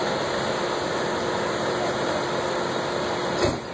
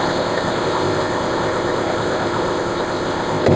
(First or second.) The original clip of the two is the first